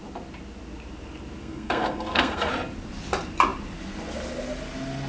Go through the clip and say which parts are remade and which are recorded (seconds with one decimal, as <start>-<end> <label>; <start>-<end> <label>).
0.0-1.4 recorded; 1.4-2.5 remade; 2.5-5.1 recorded